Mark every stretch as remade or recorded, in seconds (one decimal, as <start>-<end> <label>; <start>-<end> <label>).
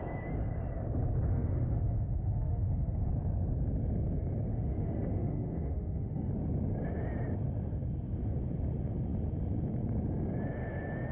0.0-1.3 recorded; 1.3-3.1 remade; 3.1-4.5 recorded; 4.5-6.3 remade; 6.3-11.1 recorded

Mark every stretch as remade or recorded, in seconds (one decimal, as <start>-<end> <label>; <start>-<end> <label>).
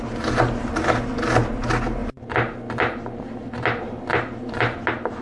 0.0-5.2 recorded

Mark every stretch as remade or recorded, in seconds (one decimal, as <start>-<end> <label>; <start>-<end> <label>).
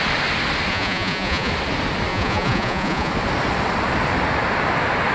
0.0-0.7 recorded; 0.7-1.5 remade; 1.5-2.1 recorded; 2.1-3.1 remade; 3.1-5.1 recorded